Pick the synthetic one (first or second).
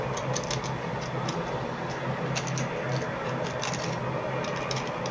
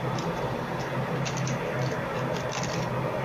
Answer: second